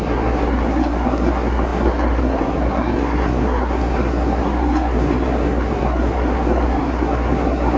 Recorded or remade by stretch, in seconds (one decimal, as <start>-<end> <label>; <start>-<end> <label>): 0.0-7.8 remade